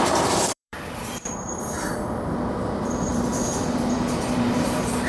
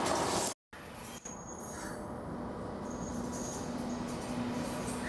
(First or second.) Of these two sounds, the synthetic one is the first